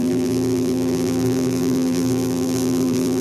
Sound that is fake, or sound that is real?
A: fake